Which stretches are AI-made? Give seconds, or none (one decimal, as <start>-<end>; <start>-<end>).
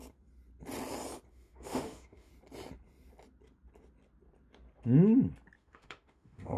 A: 1.3-2.3; 5.6-6.6